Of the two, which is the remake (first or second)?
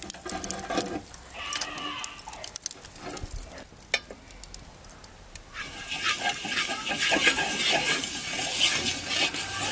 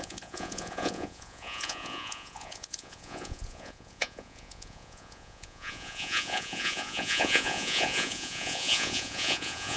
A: second